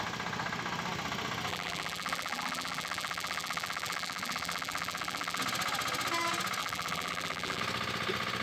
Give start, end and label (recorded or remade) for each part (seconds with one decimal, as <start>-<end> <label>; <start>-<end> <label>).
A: 0.0-1.5 recorded; 1.5-5.4 remade; 5.4-6.6 recorded; 6.6-7.6 remade; 7.6-8.4 recorded